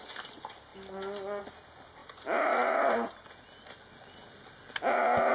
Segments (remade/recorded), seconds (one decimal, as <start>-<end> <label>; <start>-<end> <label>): 0.0-5.3 recorded